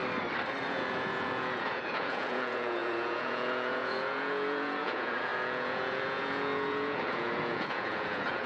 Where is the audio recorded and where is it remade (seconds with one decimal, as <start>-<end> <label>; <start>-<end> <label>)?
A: 0.0-0.7 recorded; 0.7-8.5 remade